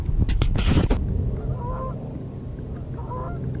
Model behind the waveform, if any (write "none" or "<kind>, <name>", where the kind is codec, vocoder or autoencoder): none